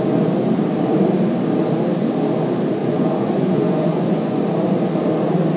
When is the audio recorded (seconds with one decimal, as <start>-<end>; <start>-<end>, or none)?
0.0-2.8; 4.4-5.6